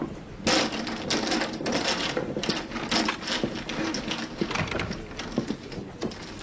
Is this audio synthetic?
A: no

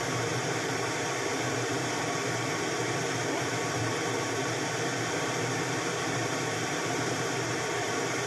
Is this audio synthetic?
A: yes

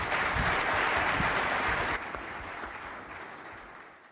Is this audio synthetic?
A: yes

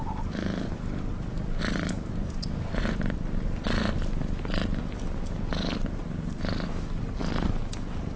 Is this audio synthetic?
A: no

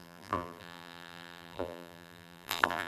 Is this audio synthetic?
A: yes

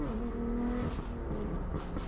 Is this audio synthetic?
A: no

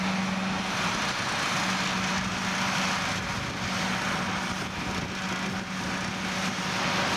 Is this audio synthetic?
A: no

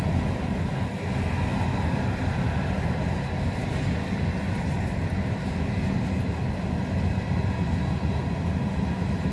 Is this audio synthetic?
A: no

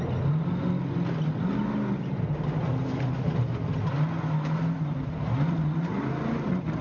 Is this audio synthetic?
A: no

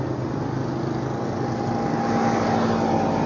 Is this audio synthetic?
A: no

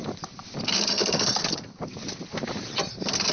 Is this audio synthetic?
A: no